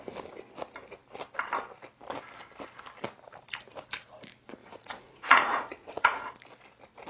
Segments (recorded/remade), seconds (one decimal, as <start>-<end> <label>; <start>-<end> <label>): 0.0-4.6 recorded; 4.6-6.3 remade; 6.3-7.1 recorded